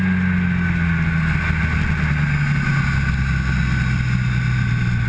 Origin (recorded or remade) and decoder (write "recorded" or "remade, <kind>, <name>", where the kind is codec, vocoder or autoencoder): recorded